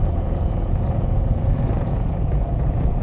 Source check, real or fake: fake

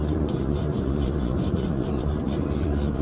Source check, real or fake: fake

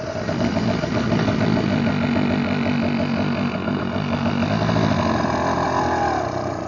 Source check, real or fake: real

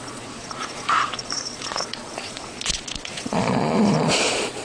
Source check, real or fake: fake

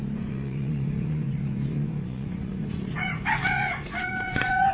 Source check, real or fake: fake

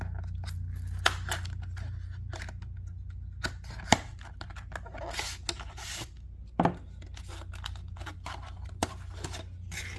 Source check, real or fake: real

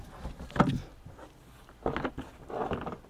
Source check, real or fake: real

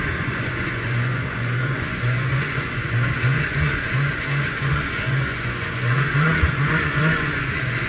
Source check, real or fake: fake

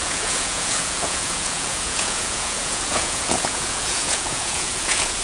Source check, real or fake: fake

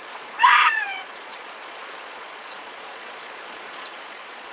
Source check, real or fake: fake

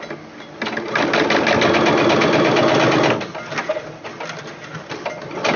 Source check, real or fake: real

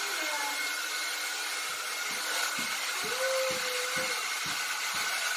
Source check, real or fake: real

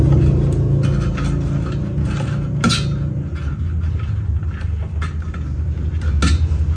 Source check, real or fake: real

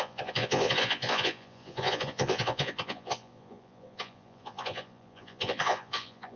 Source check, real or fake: fake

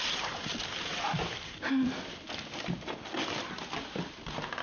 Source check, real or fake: real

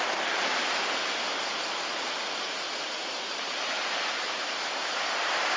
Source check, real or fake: real